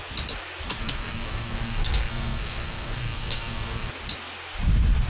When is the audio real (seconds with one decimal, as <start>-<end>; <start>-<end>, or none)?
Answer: 0.0-0.8; 3.9-5.1